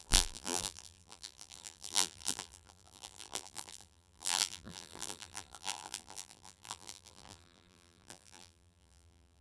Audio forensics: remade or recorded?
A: remade